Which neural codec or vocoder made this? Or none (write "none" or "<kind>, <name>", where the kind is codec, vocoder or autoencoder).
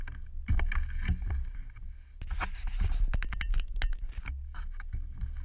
none